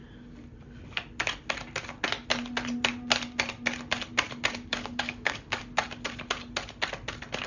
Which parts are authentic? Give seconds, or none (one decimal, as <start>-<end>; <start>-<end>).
0.0-4.7; 5.6-7.5